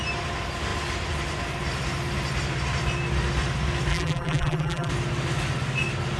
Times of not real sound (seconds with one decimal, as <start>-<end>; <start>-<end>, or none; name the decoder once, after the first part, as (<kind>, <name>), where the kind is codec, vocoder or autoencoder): 3.9-4.9 (vocoder, BigVGAN v2)